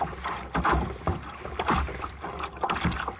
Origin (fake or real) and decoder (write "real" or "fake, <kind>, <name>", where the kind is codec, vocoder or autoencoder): real